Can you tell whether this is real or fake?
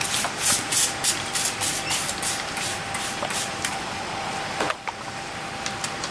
real